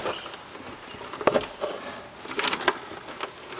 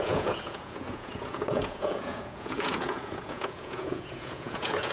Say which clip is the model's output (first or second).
second